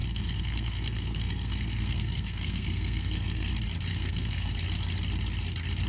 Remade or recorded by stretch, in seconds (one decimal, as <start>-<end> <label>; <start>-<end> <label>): 0.0-3.5 remade; 3.5-3.9 recorded; 3.9-4.5 remade; 4.5-5.9 recorded